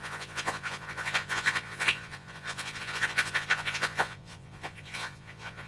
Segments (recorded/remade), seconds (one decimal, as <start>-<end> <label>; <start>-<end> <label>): 0.0-5.7 remade